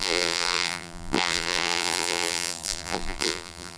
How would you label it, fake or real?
fake